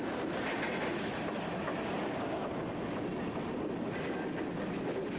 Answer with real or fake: real